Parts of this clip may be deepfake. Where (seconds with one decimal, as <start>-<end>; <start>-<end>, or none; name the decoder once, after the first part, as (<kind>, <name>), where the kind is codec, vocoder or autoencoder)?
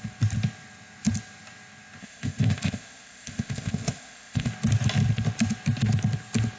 2.0-4.5 (codec, ZipCodec)